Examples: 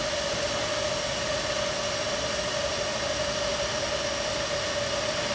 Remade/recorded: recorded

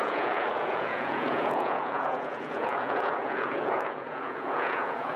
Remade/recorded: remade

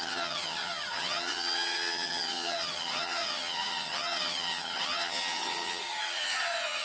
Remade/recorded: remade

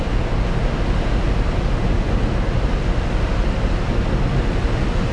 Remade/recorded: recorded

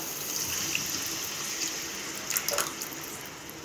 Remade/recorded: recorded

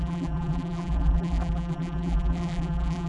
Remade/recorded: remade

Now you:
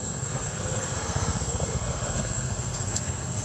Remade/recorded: remade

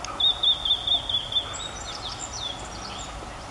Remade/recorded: recorded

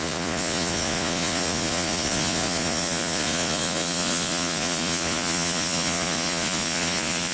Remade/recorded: remade